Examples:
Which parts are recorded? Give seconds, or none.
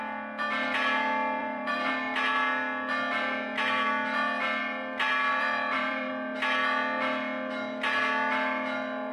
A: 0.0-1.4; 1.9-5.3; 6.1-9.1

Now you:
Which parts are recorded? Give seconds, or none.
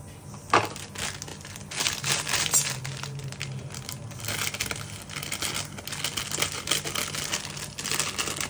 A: 0.0-1.3; 2.4-8.5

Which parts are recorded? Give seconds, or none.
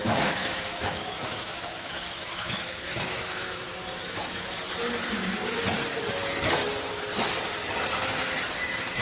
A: 4.6-9.0